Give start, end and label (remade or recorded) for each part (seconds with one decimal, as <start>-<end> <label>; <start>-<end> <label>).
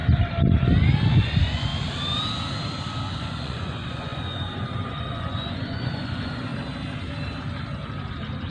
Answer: 0.0-1.1 recorded; 1.1-1.7 remade; 1.7-3.1 recorded; 3.1-6.5 remade; 6.5-8.5 recorded